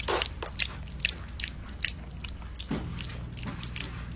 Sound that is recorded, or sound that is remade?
recorded